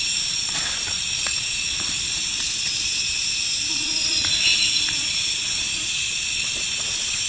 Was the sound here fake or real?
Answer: fake